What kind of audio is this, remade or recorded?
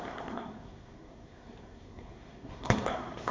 remade